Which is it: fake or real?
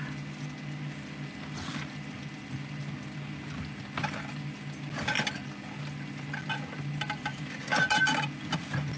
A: real